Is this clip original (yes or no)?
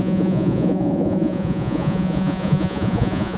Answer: no